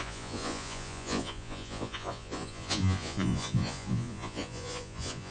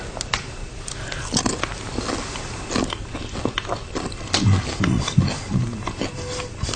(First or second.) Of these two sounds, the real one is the second